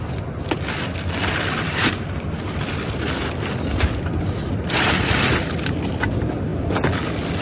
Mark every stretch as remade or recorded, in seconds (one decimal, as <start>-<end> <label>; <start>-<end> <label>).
0.0-3.2 remade; 3.2-3.8 recorded; 3.8-6.5 remade; 6.5-7.4 recorded